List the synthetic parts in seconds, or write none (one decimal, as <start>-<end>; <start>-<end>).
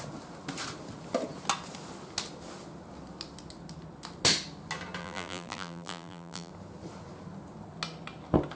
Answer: 5.0-6.5